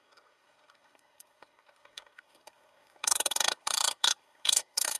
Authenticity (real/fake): fake